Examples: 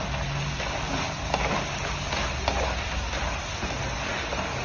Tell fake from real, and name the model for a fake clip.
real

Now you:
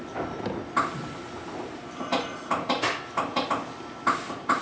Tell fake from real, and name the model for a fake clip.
real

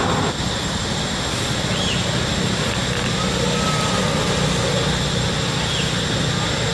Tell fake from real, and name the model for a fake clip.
real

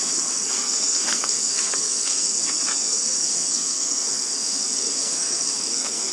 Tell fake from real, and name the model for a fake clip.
fake, codec, SNAC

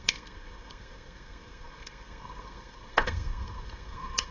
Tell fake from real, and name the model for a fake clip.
fake, codec, SNAC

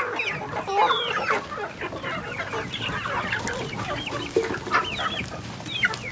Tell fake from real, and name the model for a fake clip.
real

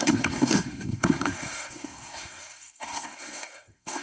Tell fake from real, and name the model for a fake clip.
fake, codec, SNAC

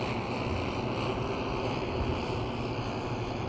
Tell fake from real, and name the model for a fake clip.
real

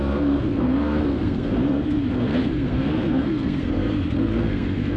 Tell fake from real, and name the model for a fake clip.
fake, codec, SNAC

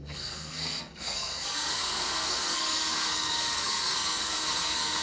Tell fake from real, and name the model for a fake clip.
fake, codec, SNAC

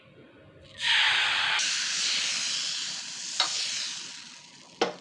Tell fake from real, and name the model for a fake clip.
real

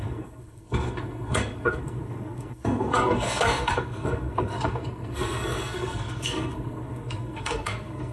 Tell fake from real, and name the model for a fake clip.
fake, codec, SNAC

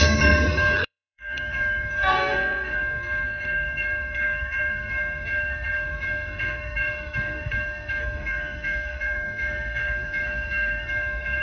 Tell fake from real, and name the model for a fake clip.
fake, codec, SNAC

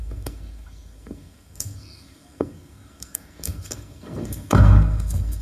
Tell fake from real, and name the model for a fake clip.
fake, codec, SNAC